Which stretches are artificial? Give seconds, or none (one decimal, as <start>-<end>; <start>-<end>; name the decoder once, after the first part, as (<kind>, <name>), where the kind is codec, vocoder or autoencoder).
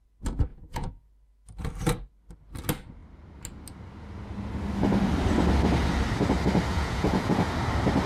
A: 0.5-1.1 (vocoder, Vocos); 6.7-7.4